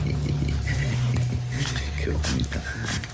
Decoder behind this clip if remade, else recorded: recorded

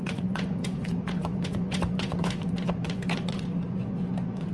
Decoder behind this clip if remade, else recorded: remade, vocoder, Vocos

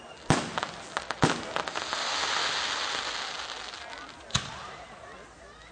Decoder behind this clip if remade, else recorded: recorded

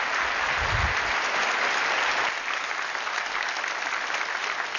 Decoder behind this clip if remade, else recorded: recorded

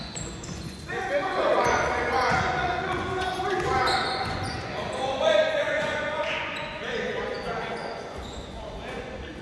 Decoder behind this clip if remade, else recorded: remade, vocoder, Vocos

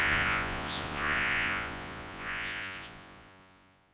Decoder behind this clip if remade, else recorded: remade, vocoder, Vocos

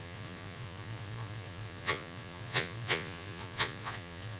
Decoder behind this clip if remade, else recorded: remade, vocoder, Vocos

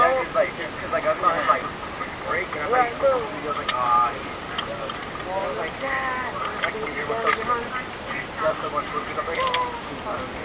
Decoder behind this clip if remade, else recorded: recorded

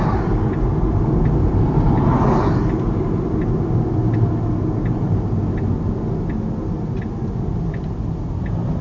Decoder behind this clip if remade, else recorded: recorded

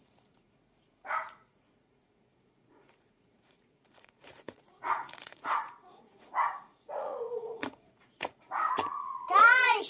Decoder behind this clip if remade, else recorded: remade, vocoder, Vocos